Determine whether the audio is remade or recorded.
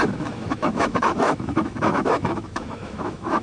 remade